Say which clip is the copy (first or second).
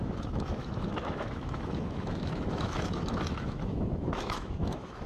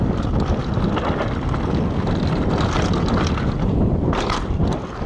first